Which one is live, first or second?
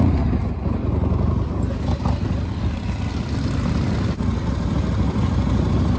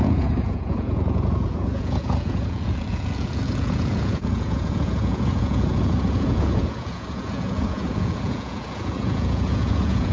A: first